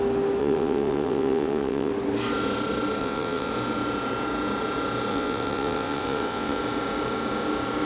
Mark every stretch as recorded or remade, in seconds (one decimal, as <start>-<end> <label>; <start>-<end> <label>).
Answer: 0.0-0.4 recorded; 0.4-1.9 remade; 1.9-3.0 recorded; 3.0-3.5 remade; 3.5-5.1 recorded; 5.1-6.6 remade; 6.6-7.9 recorded